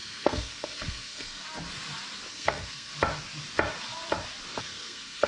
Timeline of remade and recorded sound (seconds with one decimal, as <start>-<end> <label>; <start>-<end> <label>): 0.0-1.4 remade; 1.4-2.3 recorded; 2.3-2.9 remade; 2.9-4.6 recorded; 4.6-5.3 remade